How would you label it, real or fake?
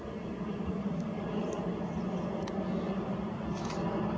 real